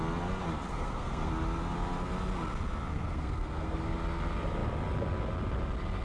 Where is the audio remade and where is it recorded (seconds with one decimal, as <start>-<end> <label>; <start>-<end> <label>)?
0.0-0.7 recorded; 0.7-1.3 remade; 1.3-2.9 recorded; 2.9-3.8 remade; 3.8-6.0 recorded